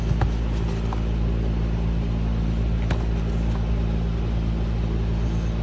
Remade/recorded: recorded